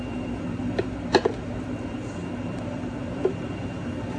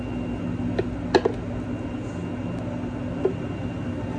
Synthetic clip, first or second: first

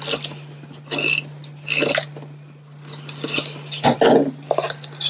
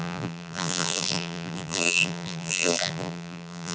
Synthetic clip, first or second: second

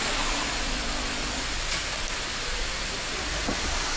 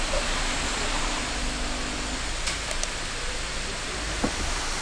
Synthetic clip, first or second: first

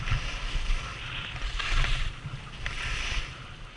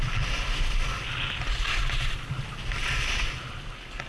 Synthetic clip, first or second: first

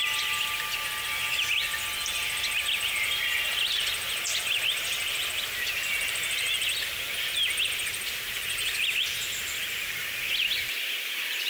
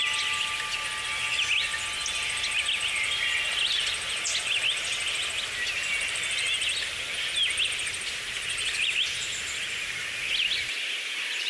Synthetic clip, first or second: first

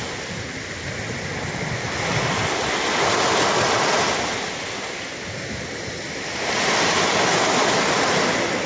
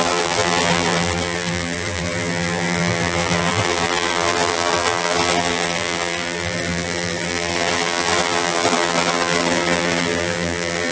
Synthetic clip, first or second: second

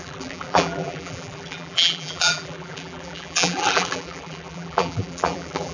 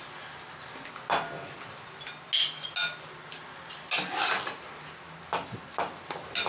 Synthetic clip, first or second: first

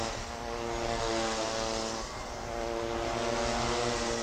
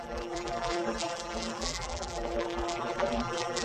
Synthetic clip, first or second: second